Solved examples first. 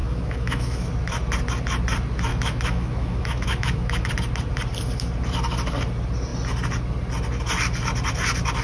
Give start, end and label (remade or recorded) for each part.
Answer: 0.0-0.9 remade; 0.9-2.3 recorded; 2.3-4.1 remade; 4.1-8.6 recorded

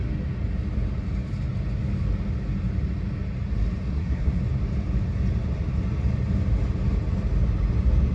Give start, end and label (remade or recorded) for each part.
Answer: 0.0-3.9 recorded; 3.9-4.4 remade; 4.4-8.1 recorded

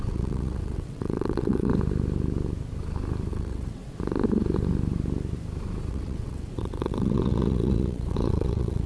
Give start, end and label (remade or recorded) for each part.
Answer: 0.0-1.7 remade; 1.7-3.3 recorded; 3.3-3.8 remade; 3.8-5.9 recorded; 5.9-8.9 remade

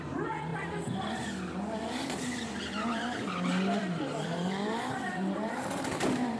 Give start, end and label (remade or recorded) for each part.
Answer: 0.0-0.5 remade; 0.5-2.2 recorded; 2.2-3.8 remade; 3.8-4.3 recorded; 4.3-6.4 remade